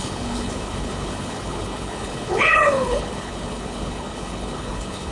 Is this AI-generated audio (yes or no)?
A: yes